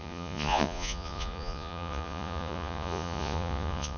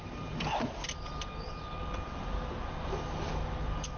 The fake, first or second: first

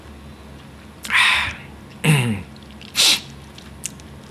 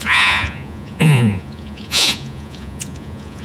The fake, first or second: second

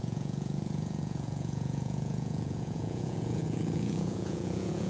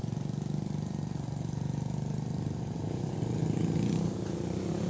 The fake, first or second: first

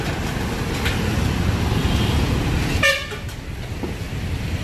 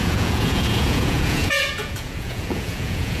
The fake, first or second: second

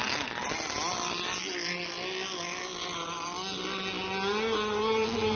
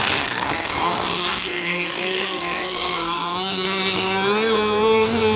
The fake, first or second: second